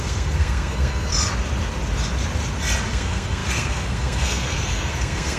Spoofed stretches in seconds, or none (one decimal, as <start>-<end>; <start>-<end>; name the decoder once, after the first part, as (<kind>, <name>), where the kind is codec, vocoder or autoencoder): 0.0-1.1 (codec, SNAC); 2.9-5.4